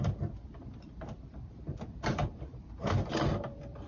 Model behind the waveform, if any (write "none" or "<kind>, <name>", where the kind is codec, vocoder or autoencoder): vocoder, BigVGAN v2